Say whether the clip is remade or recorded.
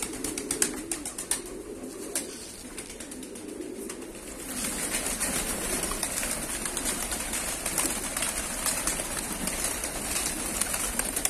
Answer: recorded